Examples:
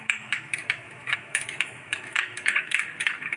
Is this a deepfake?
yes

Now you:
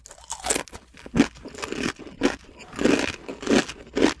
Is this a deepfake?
no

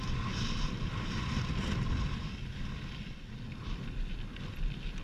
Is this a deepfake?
no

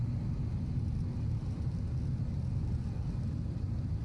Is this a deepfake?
no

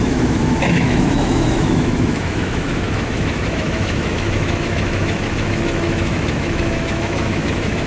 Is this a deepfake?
yes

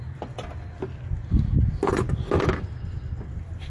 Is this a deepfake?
no